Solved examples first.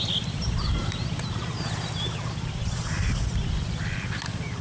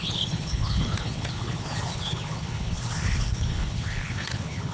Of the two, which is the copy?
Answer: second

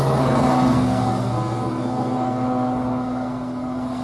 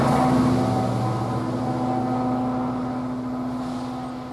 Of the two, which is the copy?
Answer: first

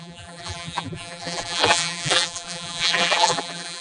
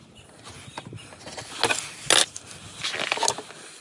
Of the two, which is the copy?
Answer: first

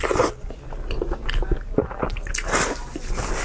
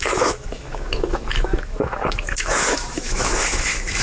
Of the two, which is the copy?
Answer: second